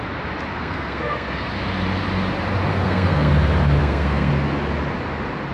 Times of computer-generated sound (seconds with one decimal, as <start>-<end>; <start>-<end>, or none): 0.5-1.5; 2.7-3.3; 3.8-4.3

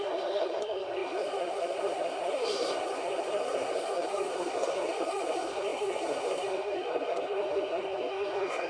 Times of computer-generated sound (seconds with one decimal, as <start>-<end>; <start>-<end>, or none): 0.0-8.7